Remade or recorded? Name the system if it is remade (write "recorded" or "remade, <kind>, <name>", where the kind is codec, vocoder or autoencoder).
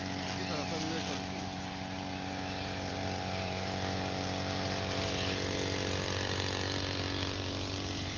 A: recorded